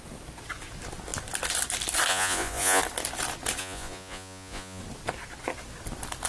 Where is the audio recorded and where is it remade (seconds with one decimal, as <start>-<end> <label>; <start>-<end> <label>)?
0.0-2.1 recorded; 2.1-2.8 remade; 2.8-3.6 recorded; 3.6-4.8 remade; 4.8-6.3 recorded